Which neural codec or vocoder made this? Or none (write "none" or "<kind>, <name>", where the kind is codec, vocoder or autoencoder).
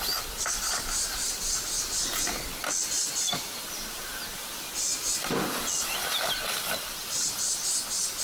none